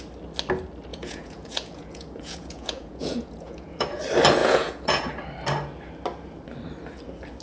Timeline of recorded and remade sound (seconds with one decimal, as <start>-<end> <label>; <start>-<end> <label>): 0.0-0.9 recorded; 0.9-4.0 remade; 4.0-4.4 recorded; 4.4-5.1 remade; 5.1-7.4 recorded